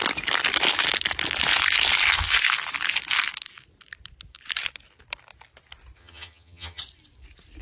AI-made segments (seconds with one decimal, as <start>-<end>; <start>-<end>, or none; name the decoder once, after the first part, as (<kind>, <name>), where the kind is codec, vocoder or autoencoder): 6.0-6.8 (vocoder, HiFi-GAN)